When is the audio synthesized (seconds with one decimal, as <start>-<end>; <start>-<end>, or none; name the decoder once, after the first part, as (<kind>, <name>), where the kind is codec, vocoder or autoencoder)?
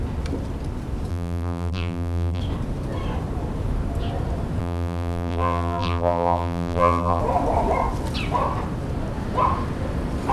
1.1-2.4 (vocoder, BigVGAN v2); 4.6-7.2